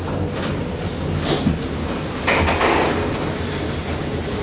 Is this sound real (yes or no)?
yes